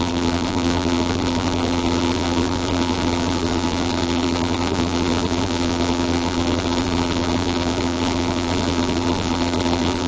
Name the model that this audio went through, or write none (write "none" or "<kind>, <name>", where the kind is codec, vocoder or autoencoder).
vocoder, BigVGAN v2